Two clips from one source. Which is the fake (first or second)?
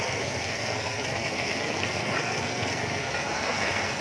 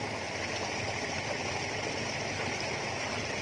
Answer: first